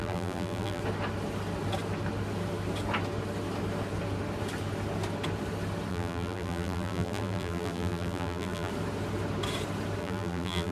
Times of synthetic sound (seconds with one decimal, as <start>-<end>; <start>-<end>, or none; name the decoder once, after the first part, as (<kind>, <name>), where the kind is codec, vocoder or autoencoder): 0.0-0.8 (vocoder, BigVGAN v2); 5.9-8.7; 10.0-10.7